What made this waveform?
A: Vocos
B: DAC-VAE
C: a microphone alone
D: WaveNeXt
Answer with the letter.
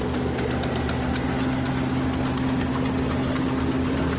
C